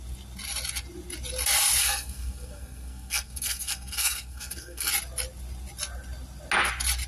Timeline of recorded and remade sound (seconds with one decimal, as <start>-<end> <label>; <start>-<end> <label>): 0.0-1.8 recorded; 1.8-4.9 remade; 4.9-7.1 recorded